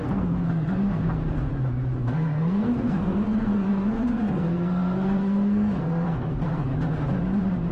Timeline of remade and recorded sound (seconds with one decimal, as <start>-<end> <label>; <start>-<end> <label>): 0.0-1.5 remade; 1.5-2.0 recorded; 2.0-6.7 remade; 6.7-7.7 recorded